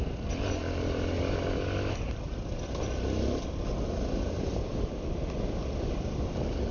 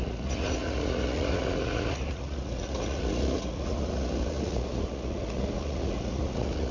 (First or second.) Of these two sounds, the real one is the first